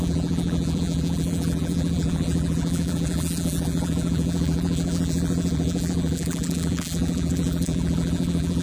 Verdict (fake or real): fake